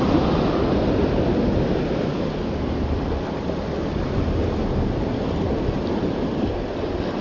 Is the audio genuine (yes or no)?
yes